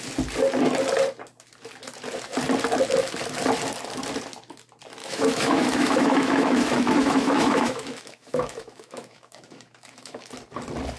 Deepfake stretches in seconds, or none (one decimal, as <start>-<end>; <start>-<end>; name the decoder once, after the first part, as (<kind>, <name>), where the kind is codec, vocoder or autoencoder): 5.0-10.3 (autoencoder, DAC-VAE)